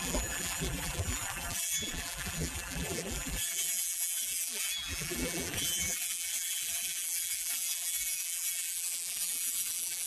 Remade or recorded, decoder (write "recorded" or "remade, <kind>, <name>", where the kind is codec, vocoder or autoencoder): remade, vocoder, BigVGAN v2